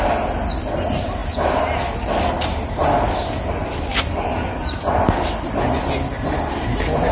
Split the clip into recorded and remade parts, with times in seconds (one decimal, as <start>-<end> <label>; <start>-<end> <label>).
0.0-7.1 recorded